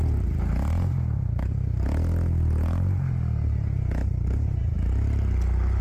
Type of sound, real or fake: real